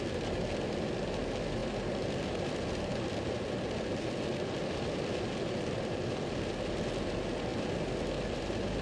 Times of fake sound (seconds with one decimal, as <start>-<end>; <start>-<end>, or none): none